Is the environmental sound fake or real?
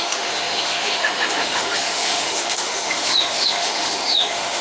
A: fake